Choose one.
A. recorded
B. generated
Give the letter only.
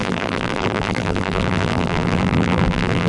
B